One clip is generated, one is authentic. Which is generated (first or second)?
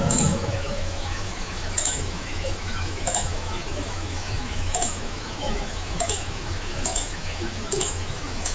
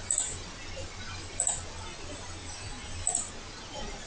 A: first